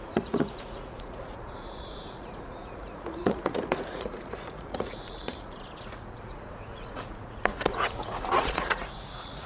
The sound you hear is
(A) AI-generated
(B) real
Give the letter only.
A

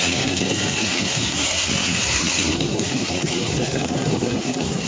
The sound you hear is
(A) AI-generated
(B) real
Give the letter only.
A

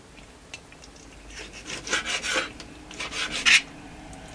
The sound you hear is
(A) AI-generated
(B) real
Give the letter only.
B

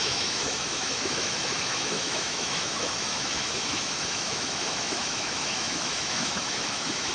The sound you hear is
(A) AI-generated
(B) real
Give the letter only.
A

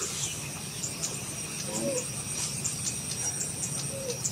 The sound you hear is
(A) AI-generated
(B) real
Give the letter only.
B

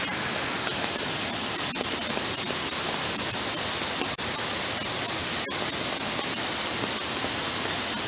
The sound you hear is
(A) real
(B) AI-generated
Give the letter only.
A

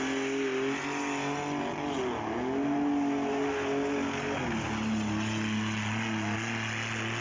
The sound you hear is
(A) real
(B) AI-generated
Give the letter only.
A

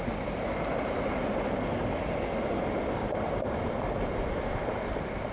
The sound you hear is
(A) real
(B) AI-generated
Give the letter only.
A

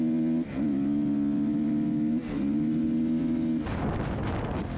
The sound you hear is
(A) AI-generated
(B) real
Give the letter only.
B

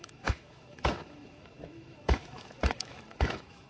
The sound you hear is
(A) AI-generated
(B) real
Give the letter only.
A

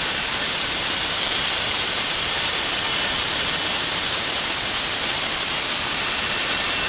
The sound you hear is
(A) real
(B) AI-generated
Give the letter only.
B